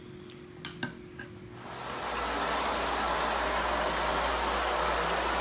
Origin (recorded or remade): recorded